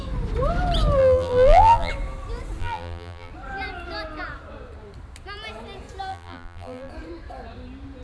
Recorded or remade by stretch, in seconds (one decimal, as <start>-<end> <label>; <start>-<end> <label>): 0.0-1.0 recorded; 1.0-1.9 remade; 1.9-2.6 recorded; 2.6-3.3 remade; 3.3-6.1 recorded; 6.1-6.9 remade; 6.9-8.0 recorded